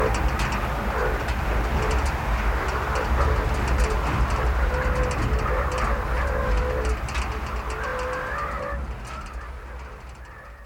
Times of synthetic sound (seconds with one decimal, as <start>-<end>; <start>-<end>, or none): none